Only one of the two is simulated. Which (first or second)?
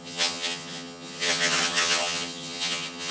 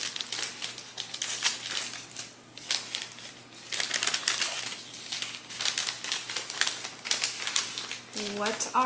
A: first